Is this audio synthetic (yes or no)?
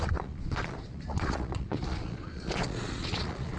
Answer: yes